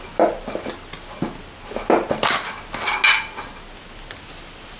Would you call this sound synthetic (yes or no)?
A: no